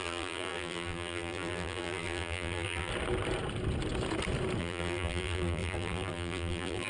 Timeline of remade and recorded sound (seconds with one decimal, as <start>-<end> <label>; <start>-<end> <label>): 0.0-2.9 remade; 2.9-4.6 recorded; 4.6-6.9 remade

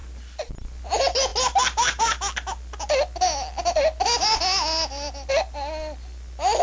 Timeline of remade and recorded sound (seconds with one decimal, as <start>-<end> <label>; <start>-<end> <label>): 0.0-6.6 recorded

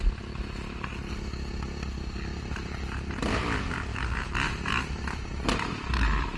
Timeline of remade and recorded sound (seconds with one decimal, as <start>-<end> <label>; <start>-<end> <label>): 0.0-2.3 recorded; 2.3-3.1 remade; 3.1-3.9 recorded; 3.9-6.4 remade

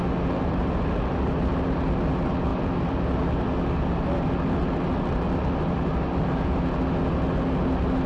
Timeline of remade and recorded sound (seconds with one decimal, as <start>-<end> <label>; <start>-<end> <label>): 0.0-2.5 recorded; 2.5-3.5 remade; 3.5-8.1 recorded